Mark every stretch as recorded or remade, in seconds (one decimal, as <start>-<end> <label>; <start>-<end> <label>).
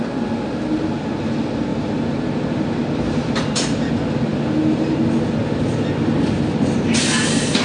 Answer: 0.0-1.7 recorded; 1.7-3.9 remade; 3.9-7.6 recorded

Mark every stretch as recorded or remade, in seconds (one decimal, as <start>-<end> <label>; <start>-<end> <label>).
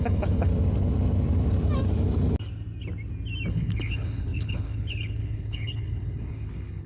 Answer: 0.0-0.5 remade; 0.5-3.5 recorded; 3.5-6.9 remade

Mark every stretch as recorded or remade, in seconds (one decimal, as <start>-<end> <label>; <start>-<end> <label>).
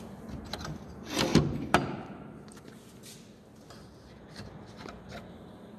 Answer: 0.0-1.3 recorded; 1.3-2.7 remade; 2.7-5.8 recorded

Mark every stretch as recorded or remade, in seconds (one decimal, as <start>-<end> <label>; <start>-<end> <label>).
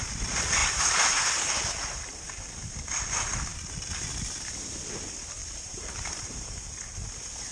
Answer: 0.0-0.6 recorded; 0.6-1.1 remade; 1.1-5.4 recorded; 5.4-6.7 remade; 6.7-7.5 recorded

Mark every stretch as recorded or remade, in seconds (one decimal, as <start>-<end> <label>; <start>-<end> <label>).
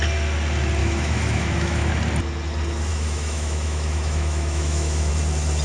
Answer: 0.0-0.8 recorded; 0.8-1.9 remade; 1.9-2.9 recorded; 2.9-5.1 remade; 5.1-5.6 recorded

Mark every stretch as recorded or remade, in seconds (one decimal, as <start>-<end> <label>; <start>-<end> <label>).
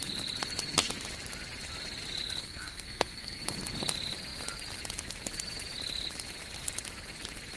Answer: 0.0-2.4 recorded; 2.4-3.4 remade; 3.4-7.6 recorded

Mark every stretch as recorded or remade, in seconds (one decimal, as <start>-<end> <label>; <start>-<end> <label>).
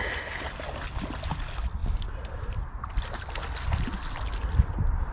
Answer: 0.0-5.1 recorded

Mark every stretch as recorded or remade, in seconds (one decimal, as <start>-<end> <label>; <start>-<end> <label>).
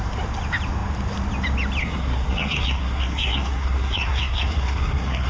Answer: 0.0-1.8 recorded; 1.8-5.3 remade